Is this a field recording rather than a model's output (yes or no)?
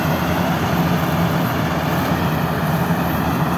yes